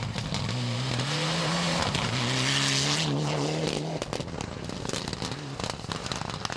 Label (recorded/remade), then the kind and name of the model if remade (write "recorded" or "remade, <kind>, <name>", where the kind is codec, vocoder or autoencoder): recorded